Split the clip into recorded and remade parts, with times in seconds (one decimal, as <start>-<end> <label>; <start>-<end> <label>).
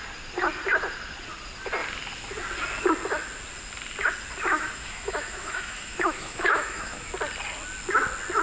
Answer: 0.0-4.5 recorded; 4.5-7.1 remade; 7.1-8.4 recorded